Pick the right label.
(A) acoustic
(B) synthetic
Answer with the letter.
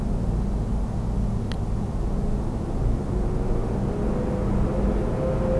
A